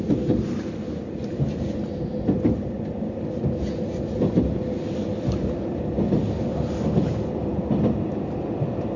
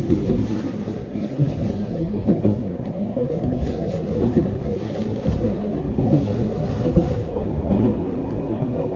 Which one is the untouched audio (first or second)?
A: first